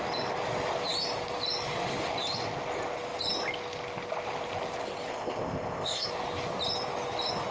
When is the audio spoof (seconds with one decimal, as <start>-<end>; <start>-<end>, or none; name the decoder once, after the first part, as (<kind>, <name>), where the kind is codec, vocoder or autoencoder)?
5.1-6.1 (codec, ZipCodec)